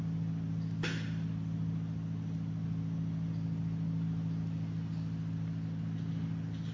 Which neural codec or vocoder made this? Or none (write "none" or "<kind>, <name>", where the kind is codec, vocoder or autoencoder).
none